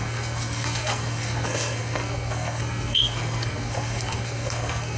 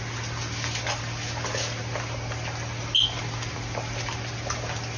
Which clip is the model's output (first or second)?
first